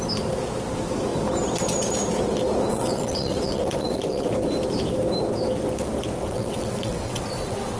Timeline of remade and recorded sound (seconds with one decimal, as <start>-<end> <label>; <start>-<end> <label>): 0.0-2.7 recorded; 2.7-4.3 remade; 4.3-6.2 recorded; 6.2-7.8 remade